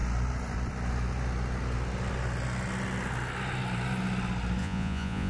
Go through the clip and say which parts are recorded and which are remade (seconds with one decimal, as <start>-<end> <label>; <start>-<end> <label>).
0.0-4.6 recorded; 4.6-5.3 remade